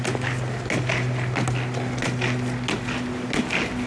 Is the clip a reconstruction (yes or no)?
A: no